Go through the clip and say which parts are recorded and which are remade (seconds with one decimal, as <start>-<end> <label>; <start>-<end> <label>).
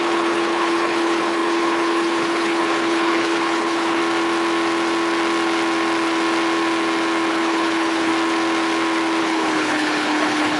0.0-4.0 remade; 4.0-7.3 recorded; 7.3-8.1 remade; 8.1-9.2 recorded; 9.2-10.6 remade